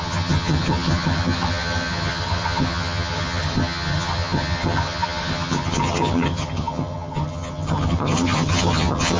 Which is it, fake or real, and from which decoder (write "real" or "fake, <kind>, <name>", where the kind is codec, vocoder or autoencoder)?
fake, vocoder, HiFi-GAN